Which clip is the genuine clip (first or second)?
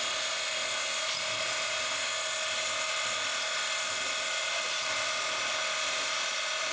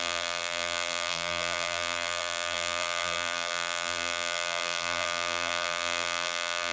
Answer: first